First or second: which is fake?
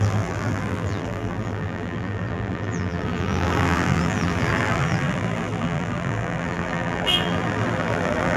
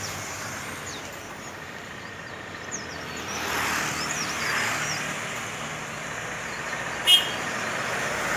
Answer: first